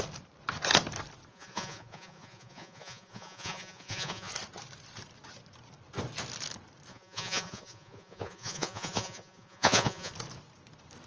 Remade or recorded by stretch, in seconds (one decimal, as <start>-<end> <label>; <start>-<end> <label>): 0.0-1.3 recorded; 1.3-4.3 remade; 4.3-6.9 recorded; 6.9-10.1 remade; 10.1-11.1 recorded